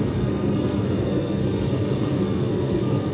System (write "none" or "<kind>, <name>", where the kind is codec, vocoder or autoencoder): codec, SNAC